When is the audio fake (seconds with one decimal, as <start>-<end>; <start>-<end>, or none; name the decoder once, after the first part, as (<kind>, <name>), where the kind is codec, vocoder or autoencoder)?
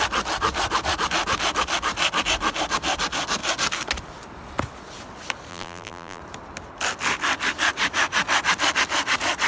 5.5-6.2 (vocoder, BigVGAN v2)